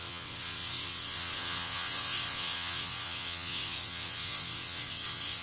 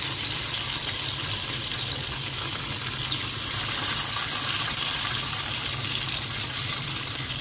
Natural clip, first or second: second